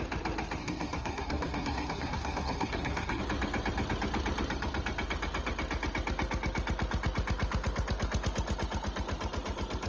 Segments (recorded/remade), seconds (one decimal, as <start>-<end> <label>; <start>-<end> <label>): 0.0-0.6 recorded; 0.6-3.2 remade; 3.2-9.9 recorded